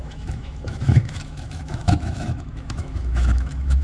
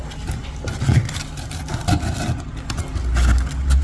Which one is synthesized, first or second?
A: first